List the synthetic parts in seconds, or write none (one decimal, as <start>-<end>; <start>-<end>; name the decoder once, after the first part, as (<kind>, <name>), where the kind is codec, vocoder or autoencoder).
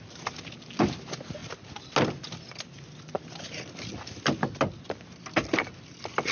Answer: none